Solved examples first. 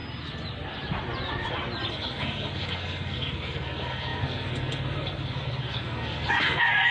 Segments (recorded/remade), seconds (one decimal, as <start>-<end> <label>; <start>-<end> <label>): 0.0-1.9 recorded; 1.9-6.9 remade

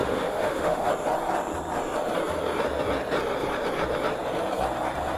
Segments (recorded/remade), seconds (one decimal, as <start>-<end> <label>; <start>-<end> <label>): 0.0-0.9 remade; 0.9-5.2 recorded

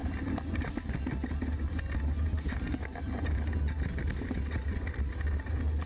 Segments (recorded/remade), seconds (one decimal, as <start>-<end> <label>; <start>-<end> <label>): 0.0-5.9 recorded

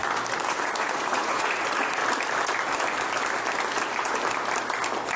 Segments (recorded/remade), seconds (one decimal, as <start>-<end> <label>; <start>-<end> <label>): 0.0-0.5 recorded; 0.5-2.0 remade; 2.0-5.2 recorded

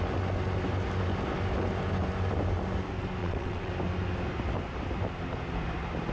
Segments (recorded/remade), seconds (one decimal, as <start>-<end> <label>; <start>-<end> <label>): 0.0-3.2 recorded; 3.2-3.7 remade; 3.7-6.1 recorded

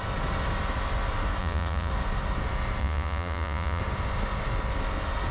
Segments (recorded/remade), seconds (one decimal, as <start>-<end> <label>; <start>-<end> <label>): 0.0-1.4 recorded; 1.4-1.9 remade; 1.9-2.8 recorded; 2.8-3.8 remade; 3.8-5.3 recorded

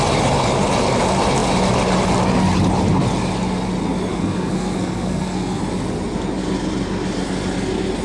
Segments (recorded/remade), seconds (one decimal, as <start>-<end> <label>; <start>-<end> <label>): 0.0-4.1 recorded; 4.1-5.6 remade; 5.6-8.0 recorded

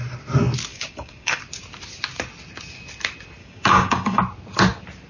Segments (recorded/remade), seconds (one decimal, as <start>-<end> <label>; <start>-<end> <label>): 0.0-0.7 recorded; 0.7-1.4 remade; 1.4-3.4 recorded; 3.4-4.2 remade; 4.2-5.1 recorded